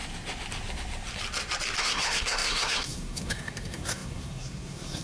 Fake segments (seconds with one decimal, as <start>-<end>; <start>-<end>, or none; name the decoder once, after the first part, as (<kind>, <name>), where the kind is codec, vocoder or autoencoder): 1.8-5.0 (codec, SNAC)